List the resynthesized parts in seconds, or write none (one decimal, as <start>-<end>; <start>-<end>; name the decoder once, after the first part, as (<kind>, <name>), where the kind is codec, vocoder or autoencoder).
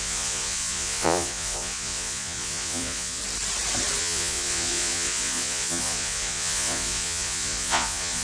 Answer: 0.0-3.2 (vocoder, Vocos); 4.0-8.2